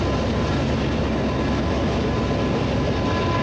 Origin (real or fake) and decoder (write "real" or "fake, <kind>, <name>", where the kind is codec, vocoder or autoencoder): real